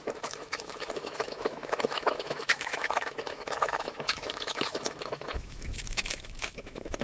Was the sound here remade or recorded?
remade